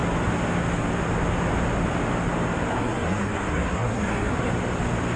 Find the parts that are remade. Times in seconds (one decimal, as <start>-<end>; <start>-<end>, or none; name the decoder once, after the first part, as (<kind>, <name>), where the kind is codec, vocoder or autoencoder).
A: 2.7-4.5 (codec, SNAC)

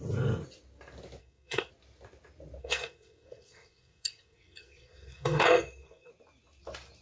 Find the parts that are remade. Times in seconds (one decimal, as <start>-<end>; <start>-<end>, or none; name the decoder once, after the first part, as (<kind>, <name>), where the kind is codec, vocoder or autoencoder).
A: 1.2-1.7 (codec, SNAC); 2.6-6.1

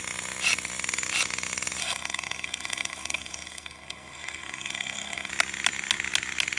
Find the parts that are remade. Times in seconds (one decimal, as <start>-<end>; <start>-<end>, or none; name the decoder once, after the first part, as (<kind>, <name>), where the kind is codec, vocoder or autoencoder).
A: 1.8-5.3 (codec, SNAC)

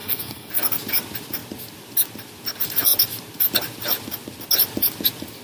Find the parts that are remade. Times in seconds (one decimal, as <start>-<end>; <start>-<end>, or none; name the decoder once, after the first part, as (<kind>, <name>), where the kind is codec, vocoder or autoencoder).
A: 0.0-0.5 (codec, SNAC)

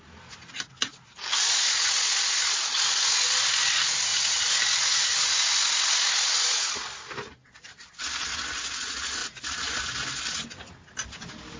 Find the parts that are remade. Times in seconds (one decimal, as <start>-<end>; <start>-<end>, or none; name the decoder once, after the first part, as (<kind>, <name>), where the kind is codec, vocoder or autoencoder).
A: none